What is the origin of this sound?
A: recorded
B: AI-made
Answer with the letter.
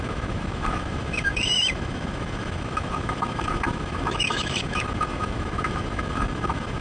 B